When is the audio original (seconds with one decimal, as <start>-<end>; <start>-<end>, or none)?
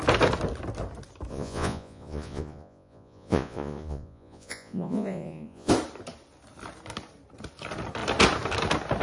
0.0-1.3; 5.7-9.0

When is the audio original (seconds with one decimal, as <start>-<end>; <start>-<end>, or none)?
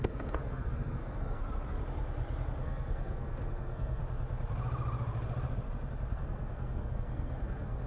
1.4-2.6; 4.0-6.1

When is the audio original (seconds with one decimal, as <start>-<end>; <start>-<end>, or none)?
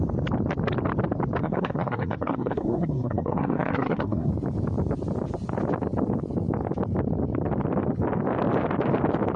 0.0-1.4; 4.3-9.4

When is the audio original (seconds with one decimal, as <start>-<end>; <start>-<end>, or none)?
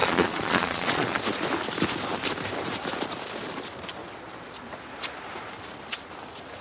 1.2-6.6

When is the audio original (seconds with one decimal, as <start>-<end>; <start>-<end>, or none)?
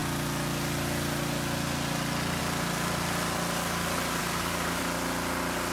0.0-4.2; 4.8-5.7